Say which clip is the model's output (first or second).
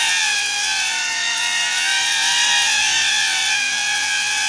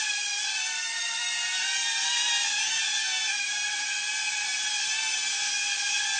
first